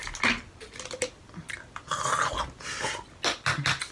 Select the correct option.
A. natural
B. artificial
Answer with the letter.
A